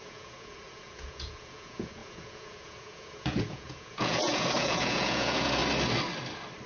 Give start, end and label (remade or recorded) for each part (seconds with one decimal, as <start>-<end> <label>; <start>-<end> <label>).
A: 0.0-5.6 remade; 5.6-6.7 recorded